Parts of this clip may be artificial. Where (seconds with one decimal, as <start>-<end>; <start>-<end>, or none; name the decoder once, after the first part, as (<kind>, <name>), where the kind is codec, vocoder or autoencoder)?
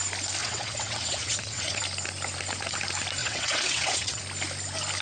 0.4-1.8 (vocoder, WaveNeXt); 3.2-4.2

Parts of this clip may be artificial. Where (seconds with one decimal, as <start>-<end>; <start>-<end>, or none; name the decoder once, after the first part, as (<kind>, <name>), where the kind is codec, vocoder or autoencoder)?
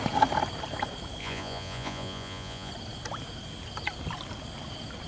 1.2-2.7 (vocoder, Vocos)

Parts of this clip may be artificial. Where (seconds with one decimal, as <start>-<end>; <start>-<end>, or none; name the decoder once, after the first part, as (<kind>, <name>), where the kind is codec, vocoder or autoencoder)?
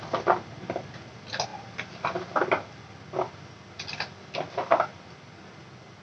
none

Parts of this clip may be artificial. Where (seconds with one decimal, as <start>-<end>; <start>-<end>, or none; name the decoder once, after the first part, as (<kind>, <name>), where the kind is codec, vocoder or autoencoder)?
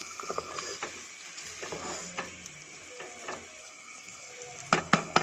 0.0-0.5 (codec, SNAC); 3.6-4.3; 4.8-5.2